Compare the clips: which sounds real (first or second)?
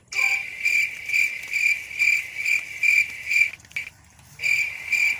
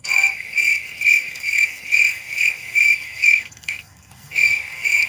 first